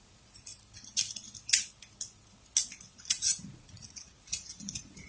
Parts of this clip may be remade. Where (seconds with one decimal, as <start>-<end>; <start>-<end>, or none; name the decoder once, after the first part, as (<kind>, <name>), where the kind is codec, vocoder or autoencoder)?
0.0-0.5 (vocoder, Vocos); 3.0-5.1

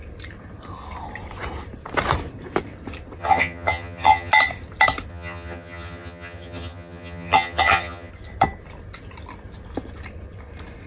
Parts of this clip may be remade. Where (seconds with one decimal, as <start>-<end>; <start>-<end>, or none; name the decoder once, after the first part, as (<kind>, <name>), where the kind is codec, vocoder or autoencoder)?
3.2-4.3 (vocoder, HiFi-GAN); 5.1-8.1

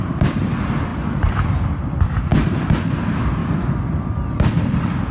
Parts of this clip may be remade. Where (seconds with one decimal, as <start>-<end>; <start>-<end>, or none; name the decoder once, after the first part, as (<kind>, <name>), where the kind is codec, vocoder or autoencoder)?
0.0-3.4 (vocoder, BigVGAN v2); 4.5-5.1

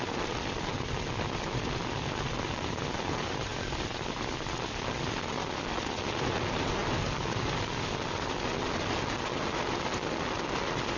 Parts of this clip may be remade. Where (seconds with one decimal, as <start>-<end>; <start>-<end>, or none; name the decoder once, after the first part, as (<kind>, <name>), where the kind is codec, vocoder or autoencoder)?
none

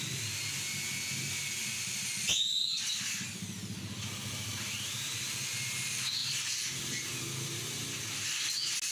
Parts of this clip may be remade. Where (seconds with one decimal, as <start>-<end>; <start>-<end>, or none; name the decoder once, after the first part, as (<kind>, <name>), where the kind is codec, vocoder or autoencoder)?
4.5-5.4 (vocoder, BigVGAN v2); 6.2-7.1

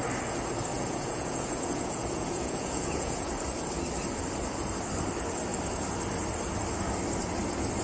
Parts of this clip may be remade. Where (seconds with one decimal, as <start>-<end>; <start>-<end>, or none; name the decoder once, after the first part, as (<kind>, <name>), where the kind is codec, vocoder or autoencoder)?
0.7-3.3 (vocoder, Vocos)

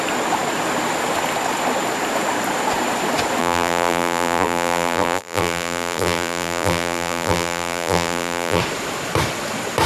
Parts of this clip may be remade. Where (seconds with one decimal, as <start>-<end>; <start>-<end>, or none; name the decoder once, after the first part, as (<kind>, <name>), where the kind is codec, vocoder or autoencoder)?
3.4-8.6 (vocoder, BigVGAN v2)